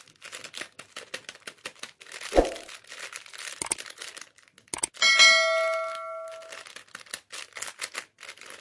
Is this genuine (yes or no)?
yes